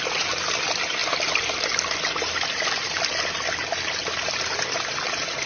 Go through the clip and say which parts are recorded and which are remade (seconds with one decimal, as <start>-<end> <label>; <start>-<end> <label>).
0.0-5.5 recorded